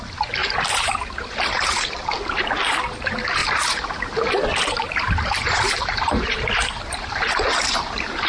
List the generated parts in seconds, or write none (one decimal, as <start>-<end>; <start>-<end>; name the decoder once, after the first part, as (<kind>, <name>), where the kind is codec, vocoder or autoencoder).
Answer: 0.4-2.0 (vocoder, BigVGAN v2); 3.4-4.1; 4.5-8.3